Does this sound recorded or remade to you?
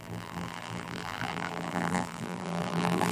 remade